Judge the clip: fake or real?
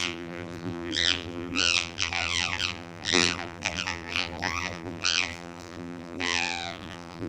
fake